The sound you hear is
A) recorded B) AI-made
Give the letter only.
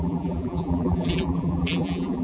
B